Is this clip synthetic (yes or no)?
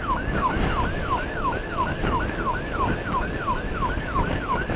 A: yes